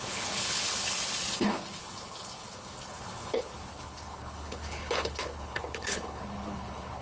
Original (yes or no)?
no